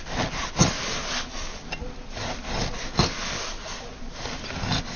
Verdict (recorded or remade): recorded